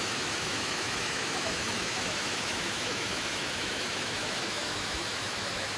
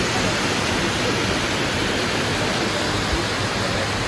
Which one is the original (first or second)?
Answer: second